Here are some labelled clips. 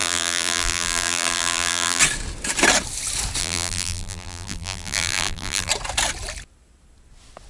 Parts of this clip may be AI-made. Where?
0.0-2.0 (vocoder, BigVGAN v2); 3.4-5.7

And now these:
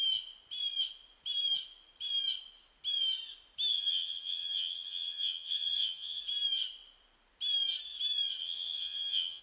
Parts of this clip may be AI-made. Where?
3.7-6.2 (vocoder, HiFi-GAN); 8.4-9.4